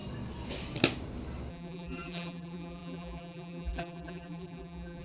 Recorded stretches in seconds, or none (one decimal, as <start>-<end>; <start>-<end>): 0.0-1.5

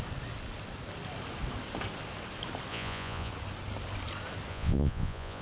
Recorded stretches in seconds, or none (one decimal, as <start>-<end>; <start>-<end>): 0.0-2.7; 3.3-4.5

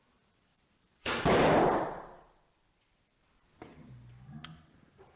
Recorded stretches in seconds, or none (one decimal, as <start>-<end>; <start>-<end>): 0.0-0.5; 3.6-5.2

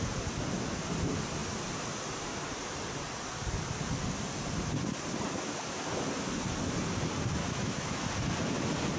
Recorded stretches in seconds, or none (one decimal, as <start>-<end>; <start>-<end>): 0.0-7.4; 8.1-9.0

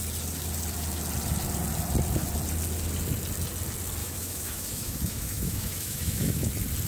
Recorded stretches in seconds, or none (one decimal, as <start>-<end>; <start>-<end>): 0.0-4.0; 6.5-6.9

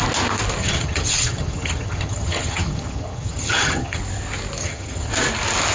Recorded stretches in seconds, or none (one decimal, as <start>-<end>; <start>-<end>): 0.0-0.6; 4.0-4.6; 5.1-5.7